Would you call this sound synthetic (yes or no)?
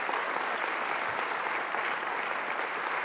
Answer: no